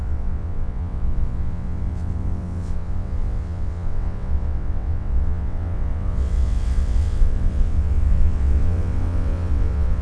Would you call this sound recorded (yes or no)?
no